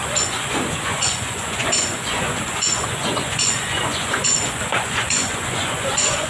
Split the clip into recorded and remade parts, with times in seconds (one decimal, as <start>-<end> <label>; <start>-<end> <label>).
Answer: 0.0-6.3 remade